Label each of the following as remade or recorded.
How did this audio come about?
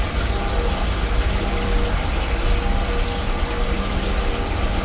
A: recorded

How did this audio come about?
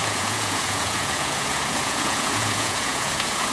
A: remade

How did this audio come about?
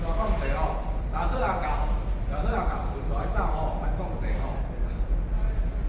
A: recorded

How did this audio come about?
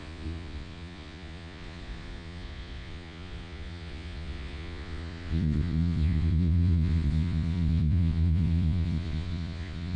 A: remade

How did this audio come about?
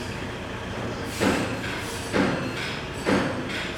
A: recorded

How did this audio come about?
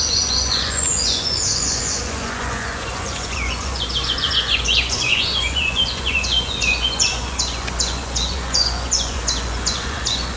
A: remade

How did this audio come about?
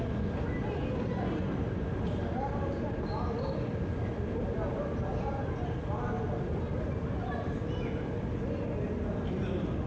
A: recorded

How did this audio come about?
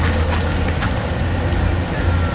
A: recorded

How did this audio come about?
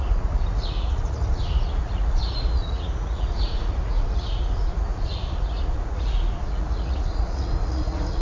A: remade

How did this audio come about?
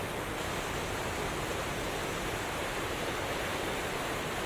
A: recorded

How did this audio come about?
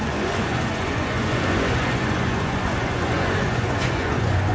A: remade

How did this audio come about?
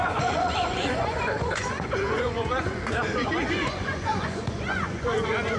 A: remade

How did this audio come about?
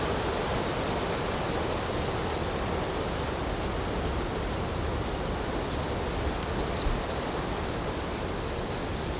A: recorded